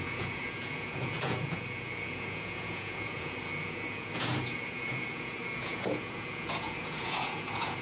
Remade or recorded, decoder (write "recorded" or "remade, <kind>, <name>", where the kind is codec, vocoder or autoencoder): remade, vocoder, Vocos